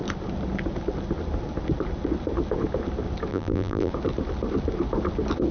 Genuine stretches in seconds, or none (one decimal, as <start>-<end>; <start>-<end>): 0.0-3.3; 3.9-5.5